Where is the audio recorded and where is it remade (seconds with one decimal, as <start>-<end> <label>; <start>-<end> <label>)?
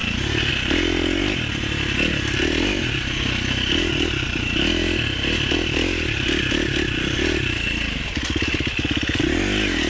0.0-9.9 recorded